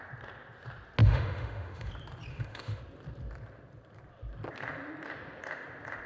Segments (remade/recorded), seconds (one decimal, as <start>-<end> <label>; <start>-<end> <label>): 0.0-1.0 recorded; 1.0-1.9 remade; 1.9-2.3 recorded; 2.3-2.8 remade; 2.8-6.1 recorded